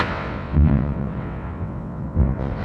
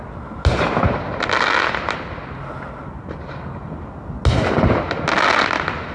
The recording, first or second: second